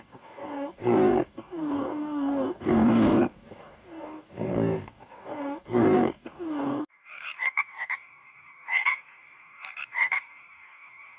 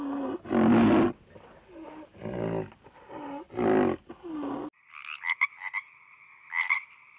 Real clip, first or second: second